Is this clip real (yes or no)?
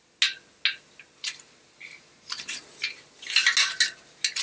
yes